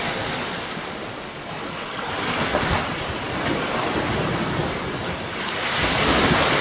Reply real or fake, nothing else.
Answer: real